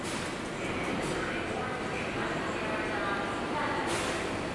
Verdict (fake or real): real